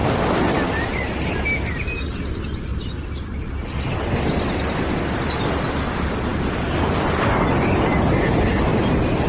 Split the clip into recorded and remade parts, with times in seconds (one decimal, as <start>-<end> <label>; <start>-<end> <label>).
0.0-0.6 remade; 0.6-9.3 recorded